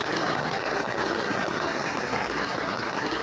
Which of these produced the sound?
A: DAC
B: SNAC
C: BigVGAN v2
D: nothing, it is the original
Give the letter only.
B